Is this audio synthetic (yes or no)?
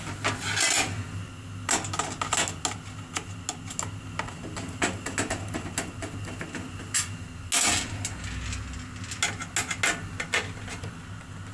no